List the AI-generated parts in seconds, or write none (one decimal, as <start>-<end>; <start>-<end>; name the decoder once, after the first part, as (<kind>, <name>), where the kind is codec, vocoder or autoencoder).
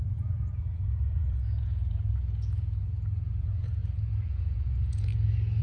0.0-3.8 (vocoder, Vocos); 4.4-5.1